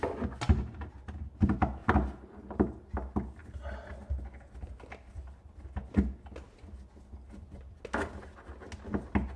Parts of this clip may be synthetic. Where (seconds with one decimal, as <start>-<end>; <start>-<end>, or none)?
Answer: none